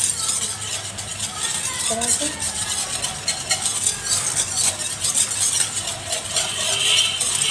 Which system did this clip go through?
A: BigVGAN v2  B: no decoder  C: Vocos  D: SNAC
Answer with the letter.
B